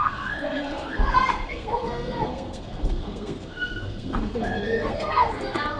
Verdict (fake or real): fake